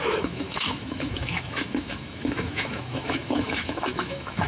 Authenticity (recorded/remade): remade